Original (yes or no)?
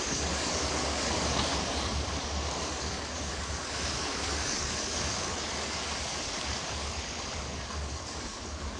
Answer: no